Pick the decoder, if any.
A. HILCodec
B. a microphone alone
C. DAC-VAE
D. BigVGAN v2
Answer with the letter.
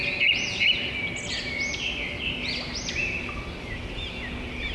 B